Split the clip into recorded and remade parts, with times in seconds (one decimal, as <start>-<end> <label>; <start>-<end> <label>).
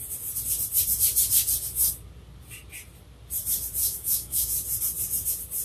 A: 0.0-3.8 recorded; 3.8-4.5 remade; 4.5-5.6 recorded